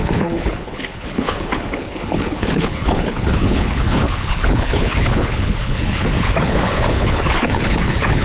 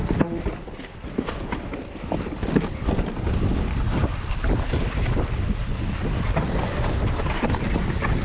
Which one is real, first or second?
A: second